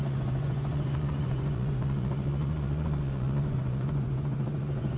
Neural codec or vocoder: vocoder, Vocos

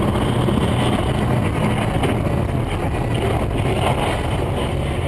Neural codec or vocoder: none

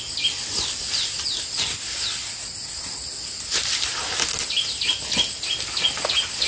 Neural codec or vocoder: none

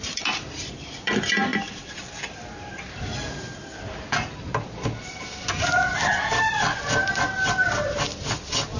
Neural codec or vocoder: none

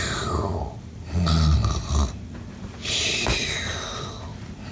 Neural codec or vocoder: none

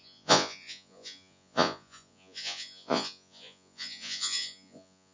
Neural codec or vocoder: vocoder, Vocos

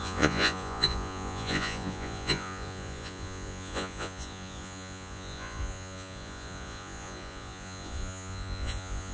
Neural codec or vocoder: vocoder, Vocos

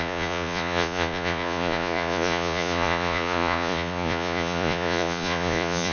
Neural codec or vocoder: vocoder, Vocos